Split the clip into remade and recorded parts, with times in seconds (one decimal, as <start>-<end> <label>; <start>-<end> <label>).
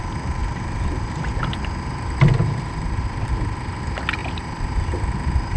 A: 0.0-5.6 recorded